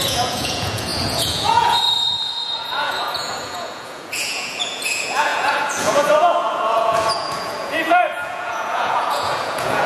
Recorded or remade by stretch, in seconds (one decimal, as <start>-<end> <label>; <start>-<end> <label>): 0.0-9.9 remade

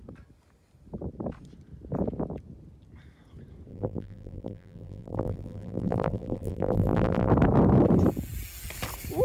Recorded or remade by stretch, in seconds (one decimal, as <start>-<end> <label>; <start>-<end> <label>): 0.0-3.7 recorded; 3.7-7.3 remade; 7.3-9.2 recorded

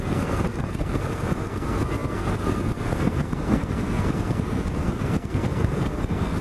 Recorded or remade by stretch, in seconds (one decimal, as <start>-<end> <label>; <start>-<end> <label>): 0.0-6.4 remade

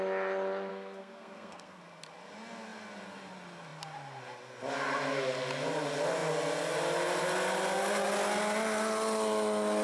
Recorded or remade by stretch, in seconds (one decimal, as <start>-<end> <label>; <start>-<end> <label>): 0.0-0.7 recorded; 0.7-1.8 remade; 1.8-9.8 recorded